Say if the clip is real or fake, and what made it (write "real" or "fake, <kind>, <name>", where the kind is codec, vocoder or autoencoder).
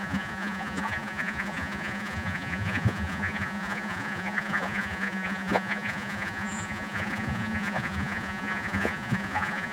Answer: fake, vocoder, Vocos